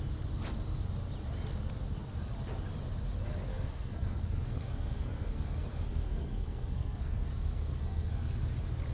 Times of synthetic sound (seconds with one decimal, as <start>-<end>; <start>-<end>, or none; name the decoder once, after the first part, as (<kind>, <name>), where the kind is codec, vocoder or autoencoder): 3.5-8.4 (codec, SNAC)